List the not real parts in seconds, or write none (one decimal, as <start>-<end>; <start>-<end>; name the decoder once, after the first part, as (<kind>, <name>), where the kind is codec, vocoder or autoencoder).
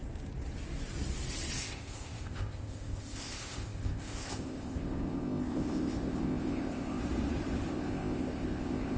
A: 1.6-7.0 (codec, ZipCodec); 7.7-9.0